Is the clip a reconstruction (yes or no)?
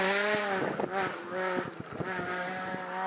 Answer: no